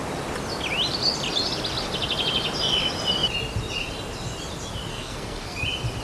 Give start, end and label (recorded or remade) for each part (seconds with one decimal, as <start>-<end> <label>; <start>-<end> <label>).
0.0-4.9 recorded; 4.9-5.6 remade; 5.6-6.0 recorded